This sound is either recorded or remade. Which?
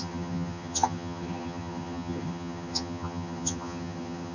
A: remade